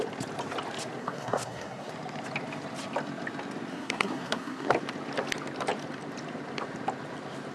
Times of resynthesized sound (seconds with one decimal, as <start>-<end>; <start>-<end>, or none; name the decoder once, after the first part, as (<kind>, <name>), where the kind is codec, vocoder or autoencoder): 1.0-1.9 (codec, SNAC); 3.7-4.7